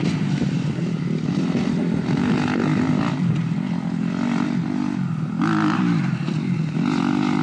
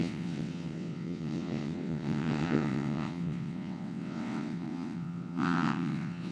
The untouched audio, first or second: first